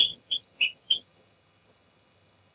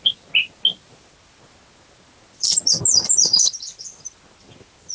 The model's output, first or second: first